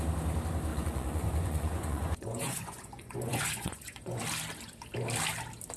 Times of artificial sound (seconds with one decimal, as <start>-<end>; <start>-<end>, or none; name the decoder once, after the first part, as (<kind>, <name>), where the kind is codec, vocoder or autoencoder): 0.7-4.2 (vocoder, Vocos)